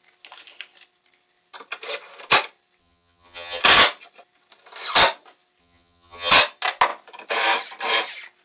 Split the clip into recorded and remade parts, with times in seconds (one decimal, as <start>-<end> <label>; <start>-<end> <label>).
0.0-2.8 recorded; 2.8-3.6 remade; 3.6-5.6 recorded; 5.6-6.3 remade; 6.3-8.4 recorded